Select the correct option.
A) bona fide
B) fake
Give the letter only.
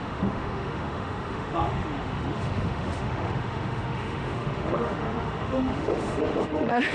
B